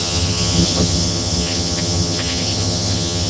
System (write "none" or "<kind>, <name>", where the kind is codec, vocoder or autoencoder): vocoder, HiFi-GAN